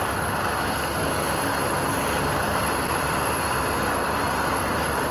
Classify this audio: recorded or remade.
remade